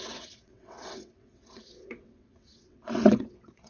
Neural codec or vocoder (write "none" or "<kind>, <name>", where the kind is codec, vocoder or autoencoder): vocoder, WaveNeXt